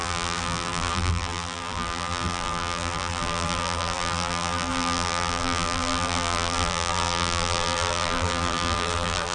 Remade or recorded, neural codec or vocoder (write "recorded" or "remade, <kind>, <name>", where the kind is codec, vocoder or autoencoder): remade, vocoder, BigVGAN v2